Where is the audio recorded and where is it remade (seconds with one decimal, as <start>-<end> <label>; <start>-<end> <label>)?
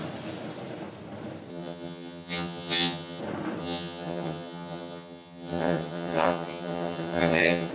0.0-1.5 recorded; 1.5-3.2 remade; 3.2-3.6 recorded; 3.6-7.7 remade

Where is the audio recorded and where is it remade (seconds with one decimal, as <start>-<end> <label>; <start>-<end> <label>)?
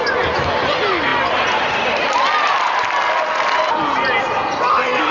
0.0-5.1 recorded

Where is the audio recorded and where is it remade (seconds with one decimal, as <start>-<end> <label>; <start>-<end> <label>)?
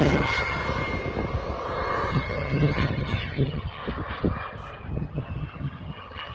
0.0-0.6 remade; 0.6-2.1 recorded; 2.1-3.8 remade; 3.8-4.9 recorded; 4.9-6.3 remade